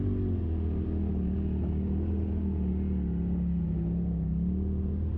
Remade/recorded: recorded